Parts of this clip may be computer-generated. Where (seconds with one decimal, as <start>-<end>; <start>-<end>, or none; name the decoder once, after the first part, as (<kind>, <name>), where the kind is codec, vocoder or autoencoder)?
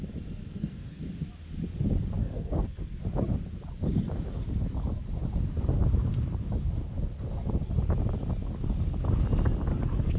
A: 0.4-1.0 (codec, SNAC); 2.2-3.0